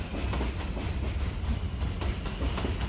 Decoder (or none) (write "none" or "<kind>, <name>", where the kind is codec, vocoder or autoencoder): none